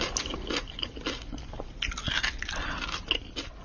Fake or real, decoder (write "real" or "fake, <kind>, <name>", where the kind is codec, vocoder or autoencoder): real